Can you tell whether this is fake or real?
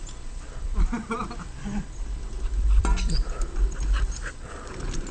real